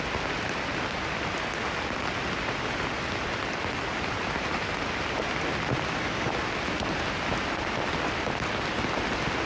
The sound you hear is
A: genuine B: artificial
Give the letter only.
A